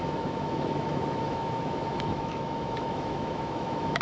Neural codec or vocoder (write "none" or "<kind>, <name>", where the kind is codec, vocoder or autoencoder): autoencoder, DAC-VAE